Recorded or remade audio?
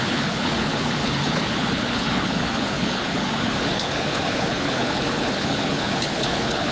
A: remade